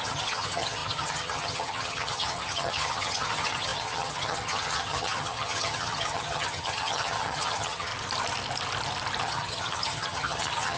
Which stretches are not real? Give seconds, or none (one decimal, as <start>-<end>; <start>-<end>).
0.0-7.9; 9.2-10.8